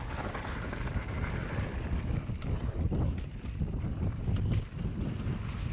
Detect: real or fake real